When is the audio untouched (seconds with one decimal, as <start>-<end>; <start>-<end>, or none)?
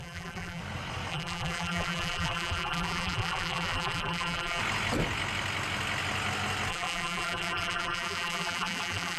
0.6-1.1; 4.6-6.7